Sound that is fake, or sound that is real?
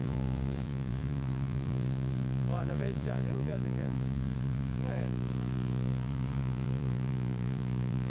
fake